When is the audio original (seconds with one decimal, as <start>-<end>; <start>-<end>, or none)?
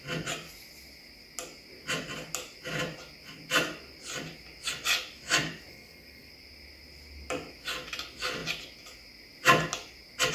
0.0-5.7; 6.3-10.3